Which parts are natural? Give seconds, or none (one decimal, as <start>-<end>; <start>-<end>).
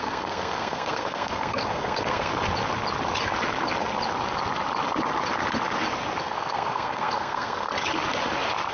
2.3-6.2; 7.7-8.7